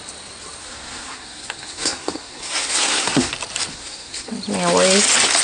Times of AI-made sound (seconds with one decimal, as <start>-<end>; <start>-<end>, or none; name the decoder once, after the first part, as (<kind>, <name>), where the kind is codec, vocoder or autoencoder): 0.6-3.3 (codec, SNAC); 3.7-4.3